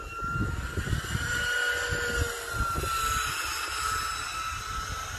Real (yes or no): yes